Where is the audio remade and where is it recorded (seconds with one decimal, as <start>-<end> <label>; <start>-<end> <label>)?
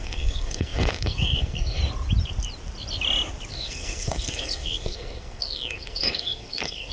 0.0-1.8 remade; 1.8-3.5 recorded; 3.5-6.9 remade